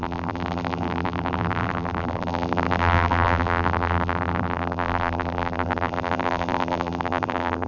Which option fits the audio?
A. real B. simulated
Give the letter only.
B